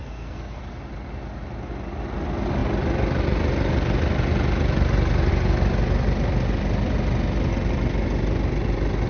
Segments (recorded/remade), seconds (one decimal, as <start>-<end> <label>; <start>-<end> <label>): 0.0-0.6 remade; 0.6-9.1 recorded